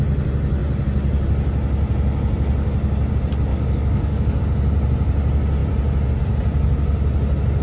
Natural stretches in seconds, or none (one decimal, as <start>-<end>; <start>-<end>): 0.0-3.5; 4.4-7.6